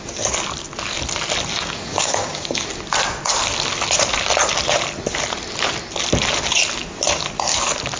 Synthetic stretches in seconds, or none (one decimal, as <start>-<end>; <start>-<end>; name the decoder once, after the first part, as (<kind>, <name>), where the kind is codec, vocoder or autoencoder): 1.5-2.7 (codec, DAC)